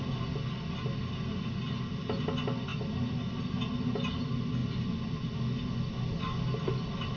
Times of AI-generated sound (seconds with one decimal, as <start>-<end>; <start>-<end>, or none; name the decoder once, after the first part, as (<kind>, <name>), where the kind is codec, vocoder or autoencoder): none